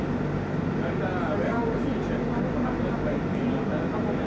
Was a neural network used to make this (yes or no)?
no